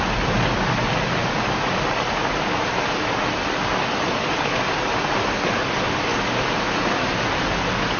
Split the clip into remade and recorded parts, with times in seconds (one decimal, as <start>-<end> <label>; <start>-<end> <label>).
0.0-8.0 recorded